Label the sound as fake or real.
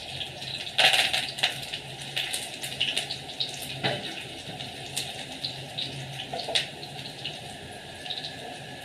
real